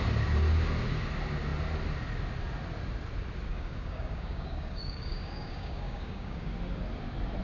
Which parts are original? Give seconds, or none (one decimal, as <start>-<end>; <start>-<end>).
0.0-3.5; 6.5-7.4